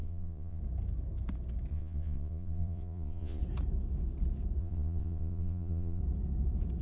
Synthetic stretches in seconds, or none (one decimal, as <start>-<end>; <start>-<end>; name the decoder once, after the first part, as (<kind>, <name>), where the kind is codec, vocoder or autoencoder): 0.0-0.6 (vocoder, Vocos); 1.7-3.4; 4.6-6.0